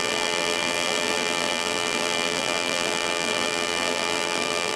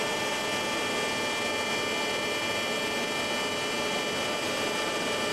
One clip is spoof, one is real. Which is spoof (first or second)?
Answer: first